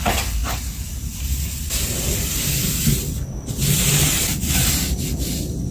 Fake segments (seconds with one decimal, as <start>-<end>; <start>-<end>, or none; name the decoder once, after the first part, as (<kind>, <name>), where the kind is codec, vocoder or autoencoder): none